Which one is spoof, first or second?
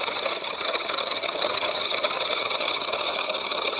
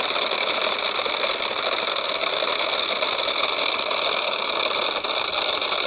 first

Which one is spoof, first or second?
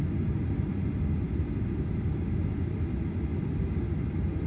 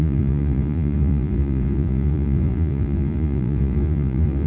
second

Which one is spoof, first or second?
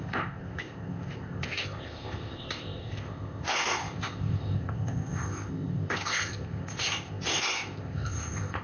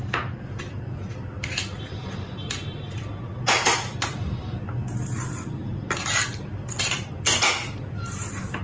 first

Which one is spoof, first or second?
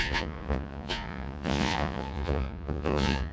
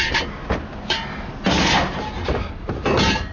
first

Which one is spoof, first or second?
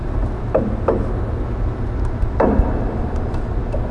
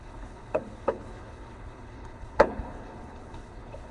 second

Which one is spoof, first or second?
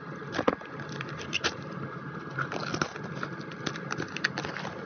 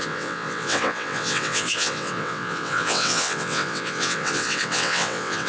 second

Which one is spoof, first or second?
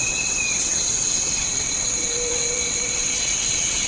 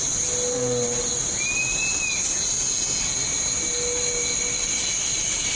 first